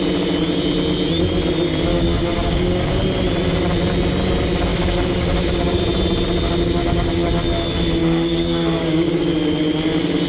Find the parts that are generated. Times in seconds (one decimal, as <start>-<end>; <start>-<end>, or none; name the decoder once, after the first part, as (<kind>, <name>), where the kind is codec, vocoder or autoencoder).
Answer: 1.9-3.0 (codec, DAC); 4.7-5.8; 6.8-7.3; 8.0-9.3